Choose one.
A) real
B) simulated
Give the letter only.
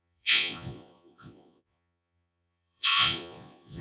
B